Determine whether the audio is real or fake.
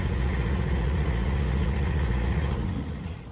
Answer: fake